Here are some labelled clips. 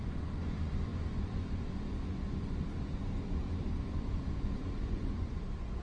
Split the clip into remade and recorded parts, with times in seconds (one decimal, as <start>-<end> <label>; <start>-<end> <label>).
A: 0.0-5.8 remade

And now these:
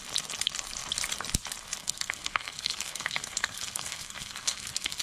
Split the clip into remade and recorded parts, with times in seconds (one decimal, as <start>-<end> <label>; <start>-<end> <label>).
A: 0.0-1.8 recorded; 1.8-5.0 remade

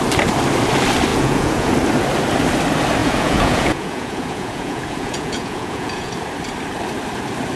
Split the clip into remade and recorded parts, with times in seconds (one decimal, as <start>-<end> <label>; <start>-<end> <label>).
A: 0.0-1.1 recorded; 1.1-1.7 remade; 1.7-3.0 recorded; 3.0-6.1 remade; 6.1-7.6 recorded

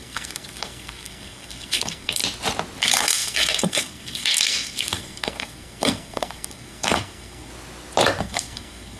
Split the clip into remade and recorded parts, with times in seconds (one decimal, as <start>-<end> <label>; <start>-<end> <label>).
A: 0.0-2.2 remade; 2.2-2.8 recorded; 2.8-7.5 remade; 7.5-8.2 recorded; 8.2-9.0 remade